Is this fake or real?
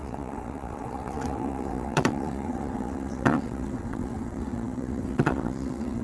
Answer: fake